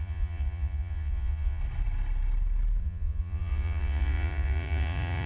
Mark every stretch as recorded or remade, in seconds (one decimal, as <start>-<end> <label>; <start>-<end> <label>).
0.0-1.6 remade; 1.6-2.8 recorded; 2.8-5.3 remade